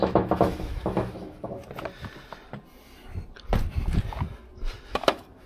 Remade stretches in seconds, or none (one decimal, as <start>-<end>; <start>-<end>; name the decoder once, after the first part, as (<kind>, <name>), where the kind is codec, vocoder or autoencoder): 0.0-1.6 (autoencoder, DAC-VAE); 4.9-5.5